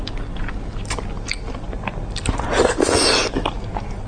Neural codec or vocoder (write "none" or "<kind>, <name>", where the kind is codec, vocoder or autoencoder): none